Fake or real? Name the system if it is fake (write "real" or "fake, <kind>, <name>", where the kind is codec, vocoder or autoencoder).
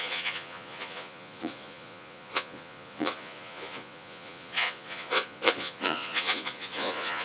fake, vocoder, Vocos